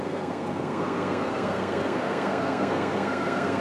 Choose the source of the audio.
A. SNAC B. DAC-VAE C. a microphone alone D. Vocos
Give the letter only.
A